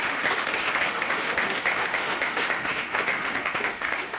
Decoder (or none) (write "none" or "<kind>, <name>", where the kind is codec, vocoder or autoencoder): autoencoder, DAC-VAE